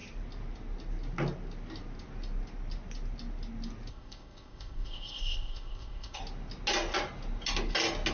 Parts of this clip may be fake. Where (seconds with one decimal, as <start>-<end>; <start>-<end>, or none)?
3.9-6.2